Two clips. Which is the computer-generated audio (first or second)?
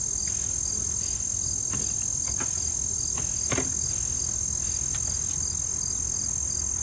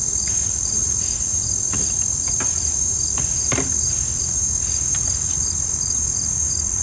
second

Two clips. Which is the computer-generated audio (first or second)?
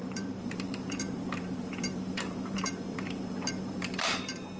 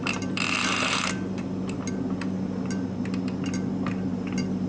first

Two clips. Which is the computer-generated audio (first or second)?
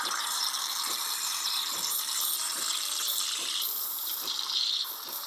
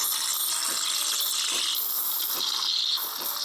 first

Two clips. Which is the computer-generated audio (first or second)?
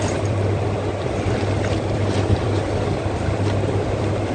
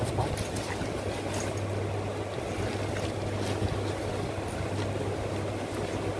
first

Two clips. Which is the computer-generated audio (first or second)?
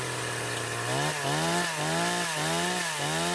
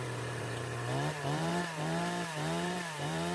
second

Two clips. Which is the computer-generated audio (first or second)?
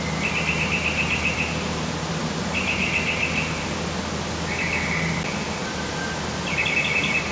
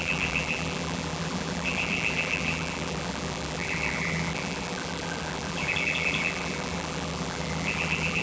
second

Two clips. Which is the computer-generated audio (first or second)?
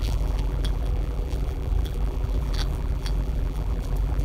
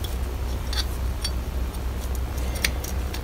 first